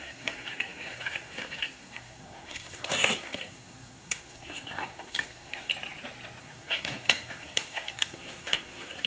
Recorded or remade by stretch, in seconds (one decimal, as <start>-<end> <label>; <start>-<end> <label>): 0.0-5.7 remade; 5.7-6.4 recorded; 6.4-9.1 remade